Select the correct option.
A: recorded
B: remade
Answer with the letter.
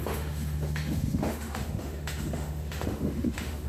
B